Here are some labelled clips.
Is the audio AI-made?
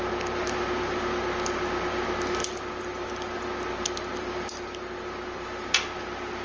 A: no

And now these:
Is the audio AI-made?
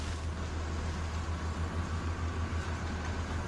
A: no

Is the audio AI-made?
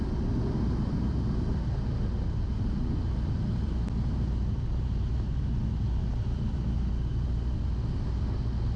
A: no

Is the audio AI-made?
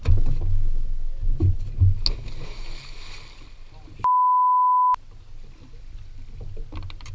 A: no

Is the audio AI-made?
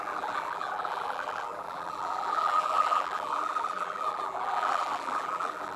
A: yes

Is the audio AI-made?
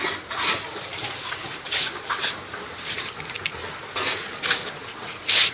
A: no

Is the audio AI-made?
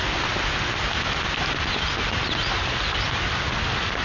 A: no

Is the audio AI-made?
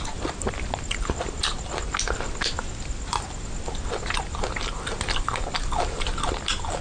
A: no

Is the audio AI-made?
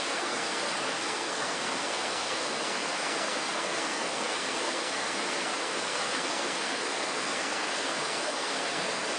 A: yes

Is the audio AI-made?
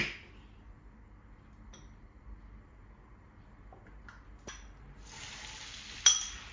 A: no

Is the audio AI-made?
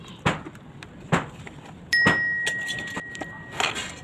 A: no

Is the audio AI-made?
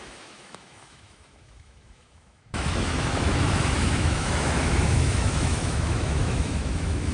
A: yes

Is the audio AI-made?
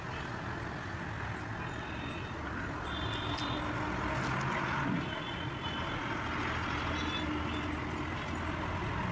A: no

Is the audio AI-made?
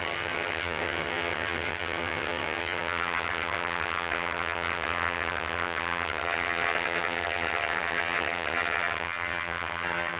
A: yes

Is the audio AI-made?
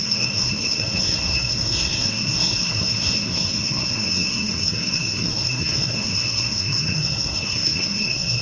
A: yes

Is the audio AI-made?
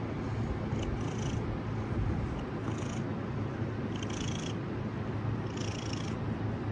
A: no